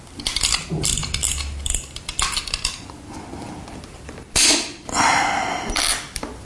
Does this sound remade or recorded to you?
recorded